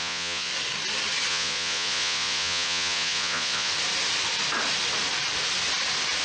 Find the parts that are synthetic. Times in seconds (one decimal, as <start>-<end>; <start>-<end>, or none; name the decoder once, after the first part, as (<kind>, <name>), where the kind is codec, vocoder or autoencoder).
0.0-0.5 (vocoder, Vocos); 1.3-3.7